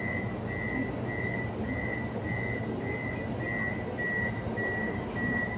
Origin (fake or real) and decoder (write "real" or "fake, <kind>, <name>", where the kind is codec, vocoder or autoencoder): real